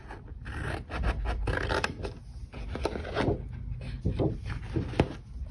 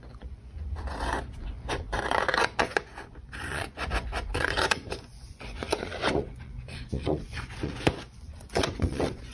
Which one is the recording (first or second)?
first